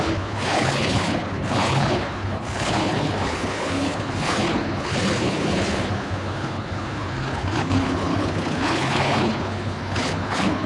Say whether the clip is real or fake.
fake